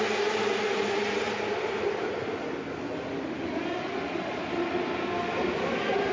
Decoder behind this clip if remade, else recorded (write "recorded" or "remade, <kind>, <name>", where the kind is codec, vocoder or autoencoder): recorded